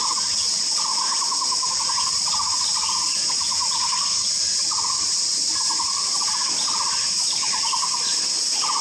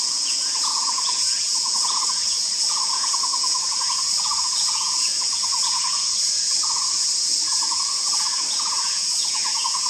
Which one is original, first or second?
first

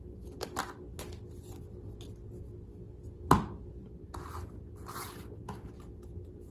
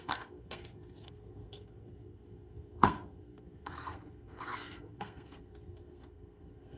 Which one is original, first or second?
first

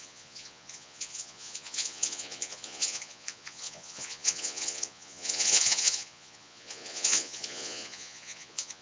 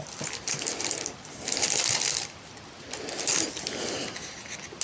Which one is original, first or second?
second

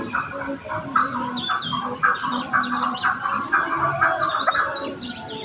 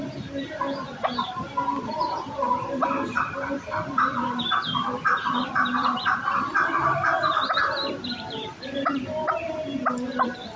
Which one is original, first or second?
first